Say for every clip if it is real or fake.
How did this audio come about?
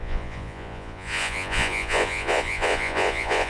fake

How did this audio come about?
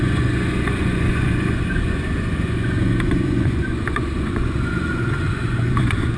fake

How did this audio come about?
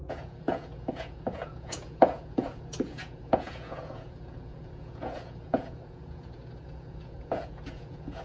fake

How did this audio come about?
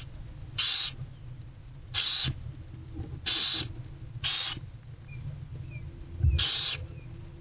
real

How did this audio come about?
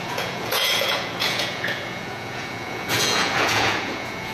fake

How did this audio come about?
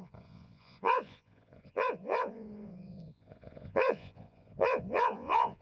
fake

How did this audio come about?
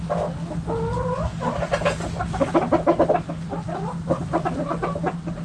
real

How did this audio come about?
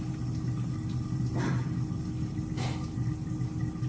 real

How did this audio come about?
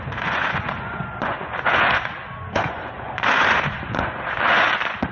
fake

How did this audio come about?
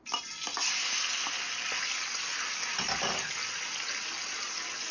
real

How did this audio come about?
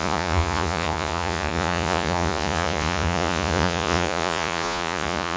fake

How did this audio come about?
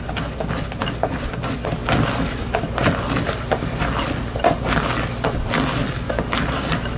real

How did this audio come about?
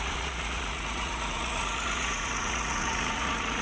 fake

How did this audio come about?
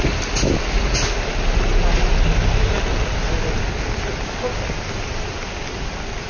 real